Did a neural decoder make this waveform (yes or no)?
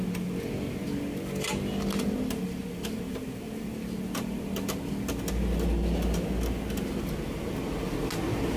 no